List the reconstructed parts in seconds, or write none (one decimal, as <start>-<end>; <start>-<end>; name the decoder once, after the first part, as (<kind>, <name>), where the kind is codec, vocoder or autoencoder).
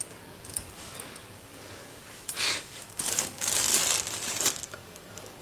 0.0-3.7 (codec, DAC); 4.7-5.4